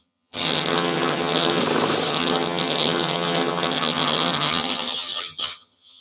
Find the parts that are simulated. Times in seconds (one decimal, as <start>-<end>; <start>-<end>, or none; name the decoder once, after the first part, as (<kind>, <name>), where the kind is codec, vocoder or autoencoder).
0.0-1.6 (vocoder, HiFi-GAN); 2.1-6.0